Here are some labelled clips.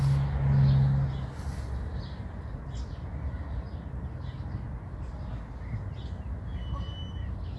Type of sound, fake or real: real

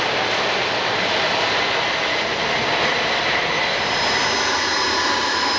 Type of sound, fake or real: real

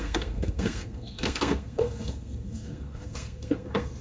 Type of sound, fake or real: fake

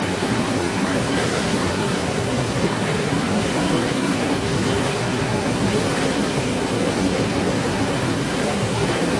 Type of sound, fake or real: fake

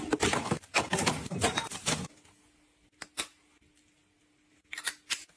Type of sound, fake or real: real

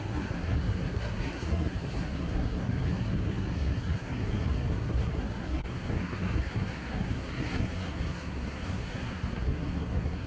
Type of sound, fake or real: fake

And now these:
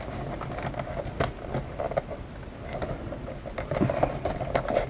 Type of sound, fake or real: real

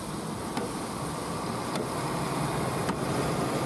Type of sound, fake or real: real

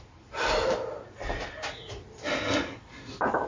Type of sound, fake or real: real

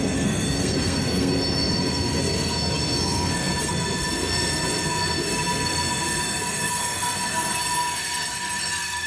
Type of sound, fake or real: fake